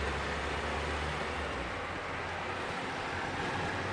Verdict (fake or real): real